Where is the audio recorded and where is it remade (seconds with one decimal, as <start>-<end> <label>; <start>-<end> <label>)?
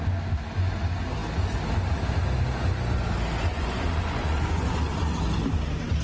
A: 0.0-3.5 recorded; 3.5-5.2 remade; 5.2-6.0 recorded